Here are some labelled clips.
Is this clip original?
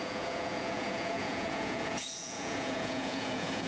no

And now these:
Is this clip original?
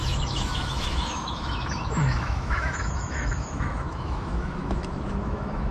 no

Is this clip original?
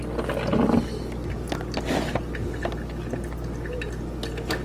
yes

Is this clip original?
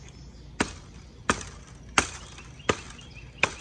yes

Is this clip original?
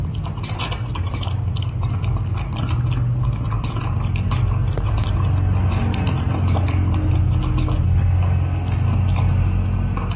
yes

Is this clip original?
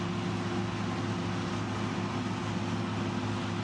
yes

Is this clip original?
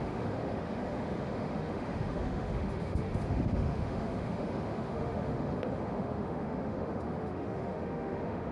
no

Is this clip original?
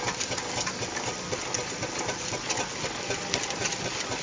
yes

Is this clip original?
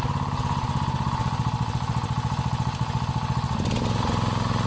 yes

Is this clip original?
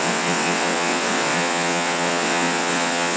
no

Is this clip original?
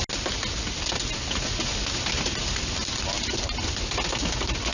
yes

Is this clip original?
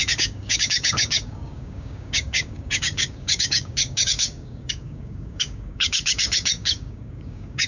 no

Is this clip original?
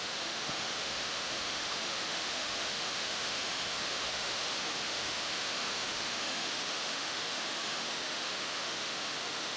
no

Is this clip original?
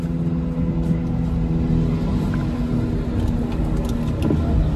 yes